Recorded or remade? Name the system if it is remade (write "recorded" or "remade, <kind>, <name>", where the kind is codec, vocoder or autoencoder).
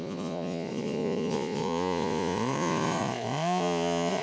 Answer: remade, vocoder, Vocos